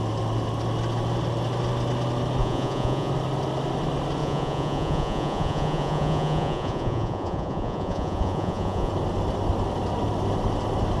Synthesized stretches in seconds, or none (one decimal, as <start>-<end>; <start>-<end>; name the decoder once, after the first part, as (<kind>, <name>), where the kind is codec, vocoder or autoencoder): 2.4-3.1 (vocoder, Vocos); 4.2-8.9